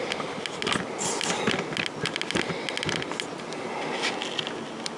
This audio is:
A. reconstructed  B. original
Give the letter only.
B